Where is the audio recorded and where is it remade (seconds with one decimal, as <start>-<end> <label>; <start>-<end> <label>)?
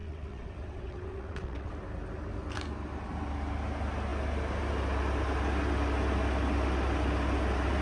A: 0.0-1.7 remade; 1.7-7.8 recorded